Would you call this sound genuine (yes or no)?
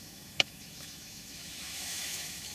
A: no